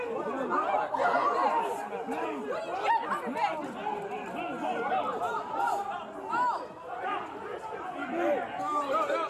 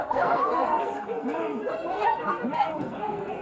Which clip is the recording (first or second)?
first